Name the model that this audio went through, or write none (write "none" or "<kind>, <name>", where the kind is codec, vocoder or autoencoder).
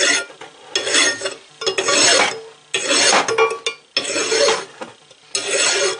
none